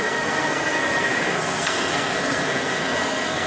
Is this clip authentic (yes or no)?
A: no